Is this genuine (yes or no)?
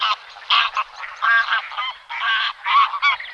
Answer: yes